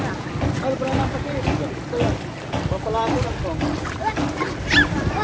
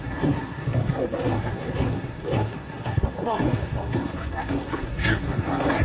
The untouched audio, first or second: first